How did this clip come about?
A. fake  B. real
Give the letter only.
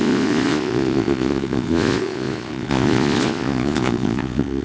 A